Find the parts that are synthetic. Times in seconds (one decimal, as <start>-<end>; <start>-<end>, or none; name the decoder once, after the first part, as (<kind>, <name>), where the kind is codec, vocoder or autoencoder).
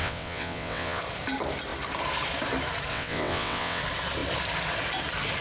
0.0-1.0 (vocoder, WaveNeXt); 2.9-3.8